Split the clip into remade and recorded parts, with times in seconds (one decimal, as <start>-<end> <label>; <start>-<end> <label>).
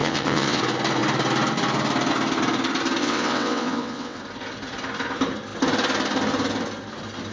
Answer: 0.0-0.6 remade; 0.6-3.0 recorded; 3.0-4.2 remade; 4.2-7.3 recorded